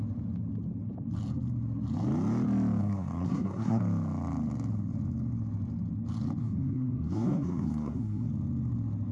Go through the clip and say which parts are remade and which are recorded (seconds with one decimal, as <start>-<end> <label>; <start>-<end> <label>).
0.0-2.8 recorded; 2.8-3.8 remade; 3.8-6.4 recorded; 6.4-8.3 remade; 8.3-9.1 recorded